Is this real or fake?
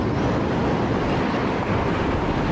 real